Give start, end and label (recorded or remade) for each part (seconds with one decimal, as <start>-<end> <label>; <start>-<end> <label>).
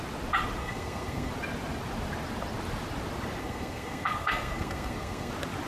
0.0-0.6 recorded; 0.6-1.3 remade; 1.3-3.4 recorded; 3.4-5.3 remade; 5.3-5.7 recorded